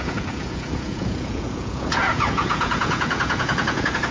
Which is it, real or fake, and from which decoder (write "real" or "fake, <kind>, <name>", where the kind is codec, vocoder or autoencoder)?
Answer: fake, vocoder, Vocos